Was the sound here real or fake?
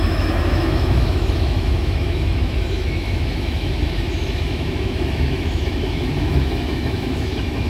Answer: fake